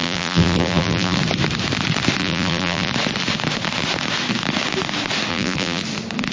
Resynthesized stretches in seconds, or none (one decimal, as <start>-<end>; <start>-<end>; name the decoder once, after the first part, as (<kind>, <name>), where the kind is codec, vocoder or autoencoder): 0.0-1.2 (vocoder, BigVGAN v2); 2.2-2.9; 5.3-5.8